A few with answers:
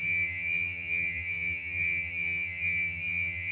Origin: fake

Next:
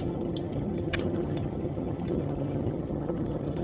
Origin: fake